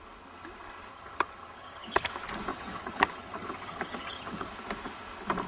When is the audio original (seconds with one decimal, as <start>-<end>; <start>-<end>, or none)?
0.0-0.9; 2.1-2.5; 4.5-5.5